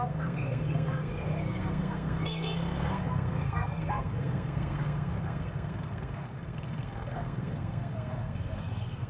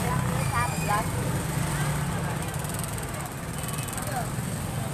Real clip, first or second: second